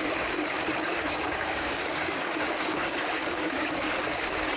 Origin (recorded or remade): remade